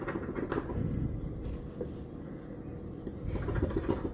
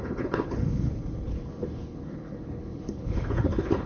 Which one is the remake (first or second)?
second